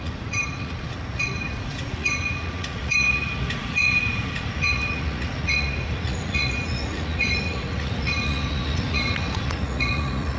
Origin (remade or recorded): remade